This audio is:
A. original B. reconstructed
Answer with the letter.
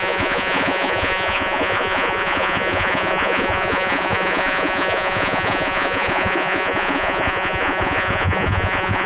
B